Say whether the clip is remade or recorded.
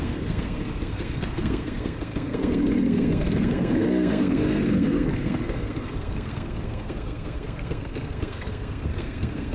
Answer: remade